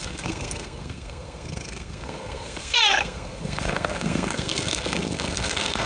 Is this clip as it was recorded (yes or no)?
no